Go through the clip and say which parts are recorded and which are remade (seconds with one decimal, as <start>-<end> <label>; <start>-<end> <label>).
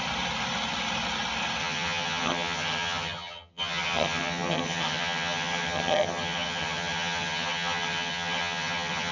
0.0-1.6 recorded; 1.6-9.1 remade